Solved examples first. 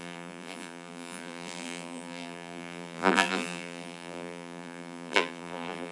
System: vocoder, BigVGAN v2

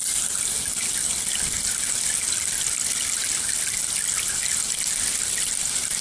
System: none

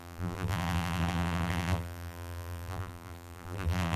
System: vocoder, BigVGAN v2